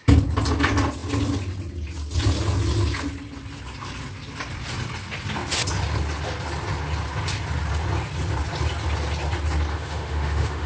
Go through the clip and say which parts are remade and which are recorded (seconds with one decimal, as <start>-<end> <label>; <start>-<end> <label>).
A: 0.0-9.7 recorded; 9.7-10.7 remade